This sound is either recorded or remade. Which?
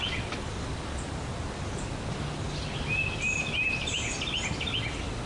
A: recorded